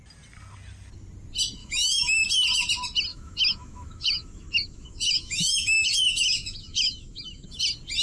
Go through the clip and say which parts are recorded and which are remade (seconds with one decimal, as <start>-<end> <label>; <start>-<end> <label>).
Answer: 0.0-1.6 recorded; 1.6-2.2 remade; 2.2-3.1 recorded; 3.1-7.6 remade; 7.6-8.0 recorded